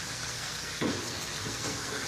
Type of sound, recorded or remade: remade